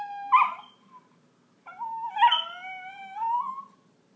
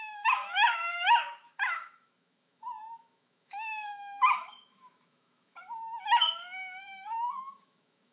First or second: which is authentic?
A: first